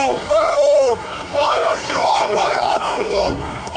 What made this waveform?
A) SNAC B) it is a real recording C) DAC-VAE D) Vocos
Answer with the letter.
A